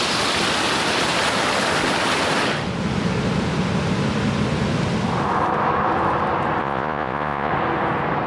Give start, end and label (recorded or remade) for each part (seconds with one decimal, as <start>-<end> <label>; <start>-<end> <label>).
0.0-6.6 recorded; 6.6-7.5 remade; 7.5-8.3 recorded